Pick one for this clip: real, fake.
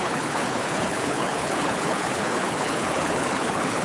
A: fake